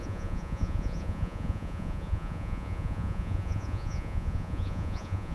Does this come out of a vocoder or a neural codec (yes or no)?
yes